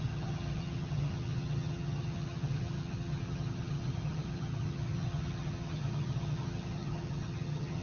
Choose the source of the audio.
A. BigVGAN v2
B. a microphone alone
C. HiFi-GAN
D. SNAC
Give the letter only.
C